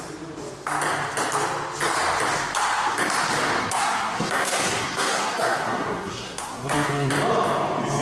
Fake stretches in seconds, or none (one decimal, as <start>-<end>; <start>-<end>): 3.6-7.1